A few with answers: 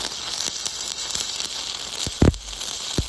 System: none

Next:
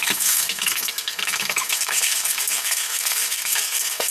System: codec, SNAC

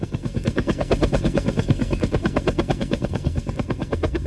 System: codec, SNAC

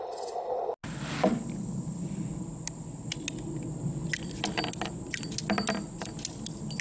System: none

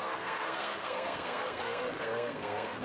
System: codec, SNAC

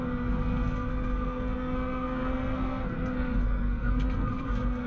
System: codec, SNAC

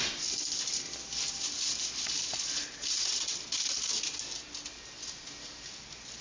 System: none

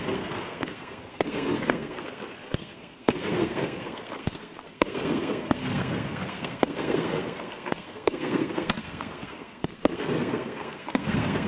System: codec, SNAC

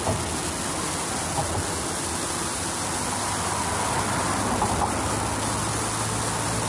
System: none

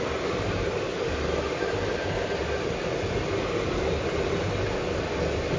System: none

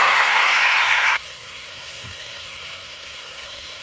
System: codec, SNAC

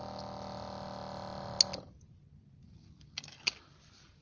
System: none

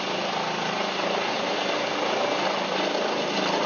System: none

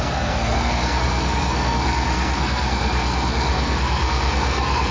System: codec, SNAC